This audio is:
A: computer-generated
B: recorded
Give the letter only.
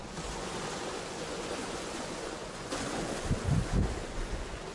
A